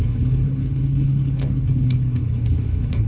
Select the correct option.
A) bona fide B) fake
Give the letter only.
B